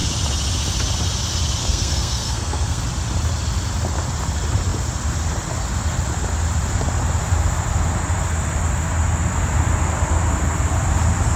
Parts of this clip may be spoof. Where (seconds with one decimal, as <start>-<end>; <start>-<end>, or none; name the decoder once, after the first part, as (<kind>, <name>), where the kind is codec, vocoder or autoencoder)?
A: 1.6-2.8 (codec, SNAC)